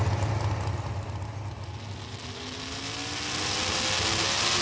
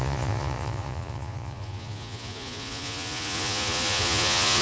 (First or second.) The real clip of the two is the first